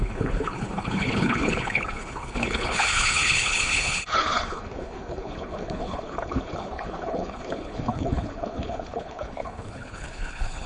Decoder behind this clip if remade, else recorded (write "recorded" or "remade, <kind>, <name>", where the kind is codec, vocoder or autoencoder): remade, codec, HILCodec